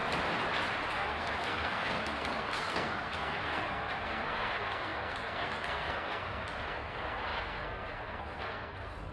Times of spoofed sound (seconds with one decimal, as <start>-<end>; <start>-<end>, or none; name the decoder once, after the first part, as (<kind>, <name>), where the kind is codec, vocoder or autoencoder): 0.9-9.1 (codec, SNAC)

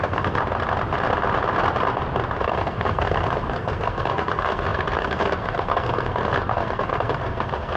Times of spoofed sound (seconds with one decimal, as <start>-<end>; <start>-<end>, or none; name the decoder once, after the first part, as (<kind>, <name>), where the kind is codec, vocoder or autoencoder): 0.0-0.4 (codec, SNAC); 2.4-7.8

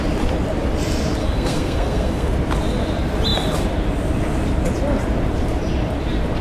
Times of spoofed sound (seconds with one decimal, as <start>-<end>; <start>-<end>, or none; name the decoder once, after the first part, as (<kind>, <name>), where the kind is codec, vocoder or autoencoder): 1.2-2.3 (codec, SNAC)

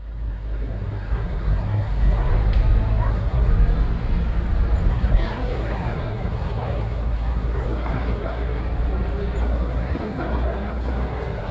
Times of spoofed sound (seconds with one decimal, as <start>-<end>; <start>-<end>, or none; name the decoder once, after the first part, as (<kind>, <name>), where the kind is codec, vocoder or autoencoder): 0.0-2.3 (codec, SNAC); 3.1-3.5; 4.9-8.6; 9.4-11.5

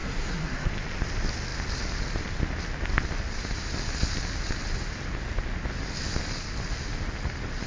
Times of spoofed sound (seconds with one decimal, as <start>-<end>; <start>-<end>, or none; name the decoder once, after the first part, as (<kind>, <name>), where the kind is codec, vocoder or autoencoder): 0.0-0.7 (codec, SNAC)

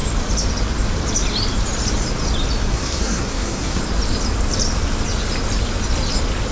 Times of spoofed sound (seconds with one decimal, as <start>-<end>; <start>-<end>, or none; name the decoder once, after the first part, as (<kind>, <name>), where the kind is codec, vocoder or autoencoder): 2.7-3.8 (codec, SNAC)